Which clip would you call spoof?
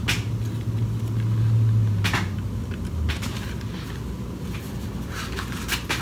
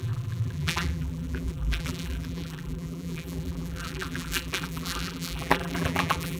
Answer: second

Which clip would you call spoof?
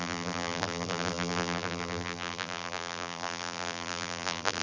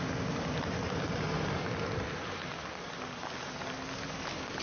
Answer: first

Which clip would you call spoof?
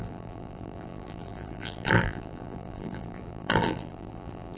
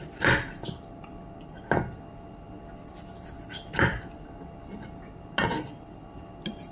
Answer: first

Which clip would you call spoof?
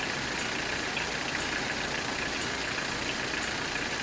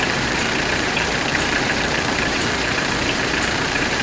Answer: second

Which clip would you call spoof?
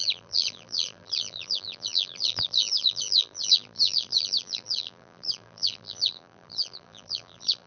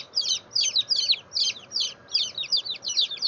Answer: first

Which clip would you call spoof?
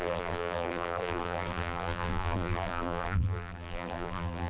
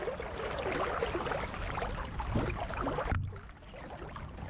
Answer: first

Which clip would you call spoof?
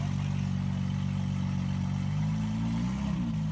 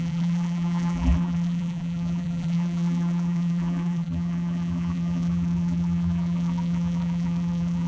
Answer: second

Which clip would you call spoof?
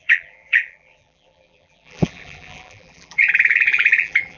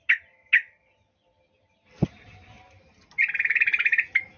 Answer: first